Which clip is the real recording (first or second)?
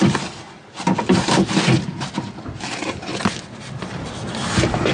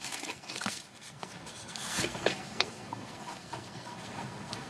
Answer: first